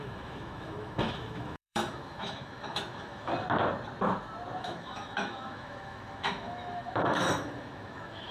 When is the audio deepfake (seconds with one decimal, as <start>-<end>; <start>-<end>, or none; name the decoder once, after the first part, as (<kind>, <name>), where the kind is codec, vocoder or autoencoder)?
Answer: 0.0-3.3 (autoencoder, DAC-VAE); 4.6-8.3